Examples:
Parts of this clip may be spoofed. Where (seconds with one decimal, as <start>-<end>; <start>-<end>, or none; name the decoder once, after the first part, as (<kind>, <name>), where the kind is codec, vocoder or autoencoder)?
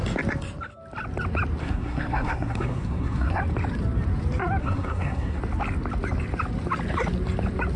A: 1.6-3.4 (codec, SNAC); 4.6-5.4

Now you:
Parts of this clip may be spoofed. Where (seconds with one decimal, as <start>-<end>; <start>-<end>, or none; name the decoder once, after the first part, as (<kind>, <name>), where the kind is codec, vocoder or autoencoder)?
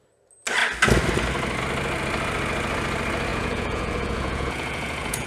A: 3.3-5.3 (vocoder, Vocos)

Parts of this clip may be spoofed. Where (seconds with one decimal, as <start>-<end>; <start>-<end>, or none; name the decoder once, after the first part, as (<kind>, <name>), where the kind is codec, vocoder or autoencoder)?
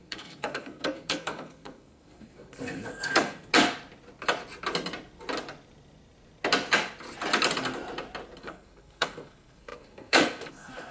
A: 0.0-3.5 (codec, SNAC); 8.4-10.9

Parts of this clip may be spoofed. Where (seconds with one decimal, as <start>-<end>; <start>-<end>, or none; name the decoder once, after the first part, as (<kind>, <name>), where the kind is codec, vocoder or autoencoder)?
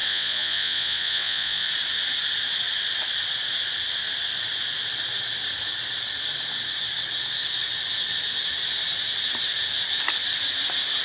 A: 0.0-1.7 (vocoder, Vocos)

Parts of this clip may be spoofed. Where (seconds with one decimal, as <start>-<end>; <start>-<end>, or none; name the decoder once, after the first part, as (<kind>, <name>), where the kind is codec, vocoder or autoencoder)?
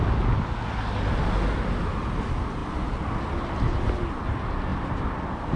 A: 4.7-5.6 (vocoder, BigVGAN v2)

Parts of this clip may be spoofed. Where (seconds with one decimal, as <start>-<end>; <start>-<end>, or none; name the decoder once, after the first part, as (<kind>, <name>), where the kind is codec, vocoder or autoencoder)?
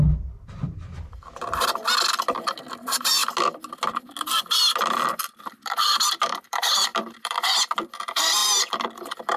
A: 0.0-3.2 (vocoder, BigVGAN v2); 5.4-9.4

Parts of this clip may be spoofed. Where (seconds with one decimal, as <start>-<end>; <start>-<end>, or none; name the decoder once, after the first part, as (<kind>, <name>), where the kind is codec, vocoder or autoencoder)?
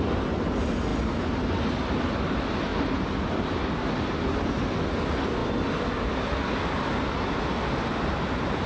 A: none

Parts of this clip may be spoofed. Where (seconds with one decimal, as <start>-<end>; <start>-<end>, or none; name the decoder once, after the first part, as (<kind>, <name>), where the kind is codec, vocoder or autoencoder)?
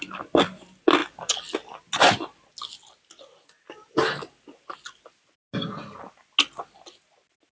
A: none